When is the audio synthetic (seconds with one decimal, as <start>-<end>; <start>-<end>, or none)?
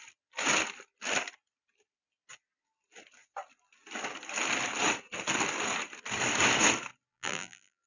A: 7.1-7.9